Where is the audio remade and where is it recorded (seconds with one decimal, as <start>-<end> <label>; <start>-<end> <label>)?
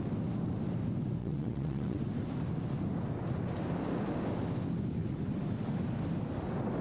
0.0-1.2 recorded; 1.2-2.0 remade; 2.0-6.8 recorded